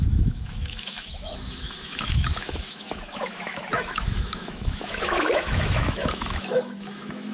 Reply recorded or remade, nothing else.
remade